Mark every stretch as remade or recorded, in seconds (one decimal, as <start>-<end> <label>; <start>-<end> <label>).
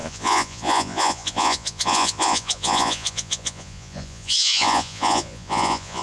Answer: 0.0-6.0 remade